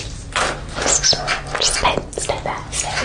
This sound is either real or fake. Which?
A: real